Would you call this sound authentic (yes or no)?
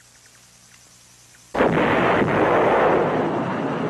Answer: yes